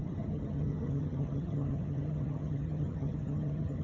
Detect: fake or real fake